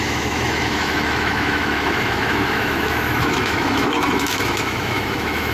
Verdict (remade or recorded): remade